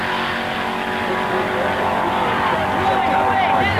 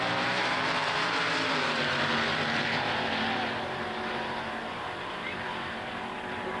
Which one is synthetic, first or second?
second